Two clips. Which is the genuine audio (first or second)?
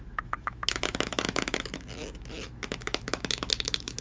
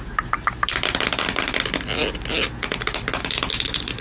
second